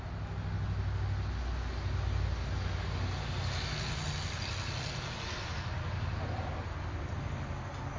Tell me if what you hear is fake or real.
real